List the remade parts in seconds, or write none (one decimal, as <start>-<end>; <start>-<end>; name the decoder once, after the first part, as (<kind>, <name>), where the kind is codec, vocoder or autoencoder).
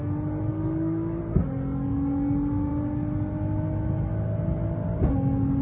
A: 0.5-1.2 (codec, DAC)